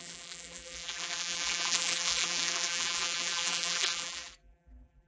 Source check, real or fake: fake